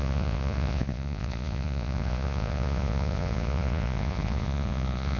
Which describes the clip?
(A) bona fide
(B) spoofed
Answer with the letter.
B